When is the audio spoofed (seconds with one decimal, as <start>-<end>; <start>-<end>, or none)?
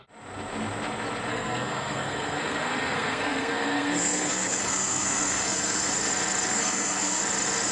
1.3-5.9; 6.5-7.2